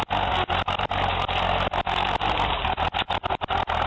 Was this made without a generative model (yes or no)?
yes